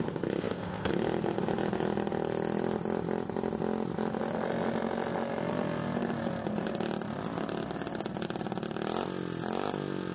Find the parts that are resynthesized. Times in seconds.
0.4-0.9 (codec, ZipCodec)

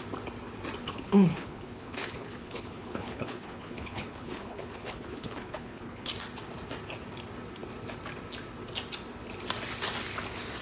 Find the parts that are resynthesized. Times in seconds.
0.8-6.1 (codec, HILCodec)

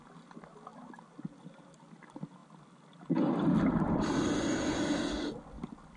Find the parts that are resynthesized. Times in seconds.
none

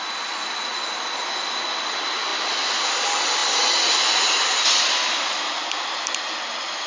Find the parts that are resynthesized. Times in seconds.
none